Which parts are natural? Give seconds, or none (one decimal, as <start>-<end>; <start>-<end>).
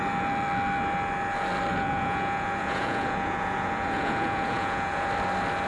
0.0-1.7; 5.1-5.7